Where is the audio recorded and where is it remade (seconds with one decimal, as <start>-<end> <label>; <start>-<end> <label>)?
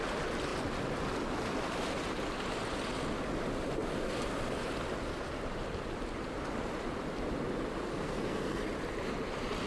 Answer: 0.0-7.9 recorded; 7.9-8.6 remade; 8.6-9.7 recorded